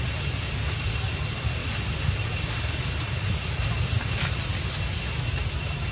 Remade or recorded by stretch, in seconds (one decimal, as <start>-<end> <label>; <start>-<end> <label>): 0.0-5.9 recorded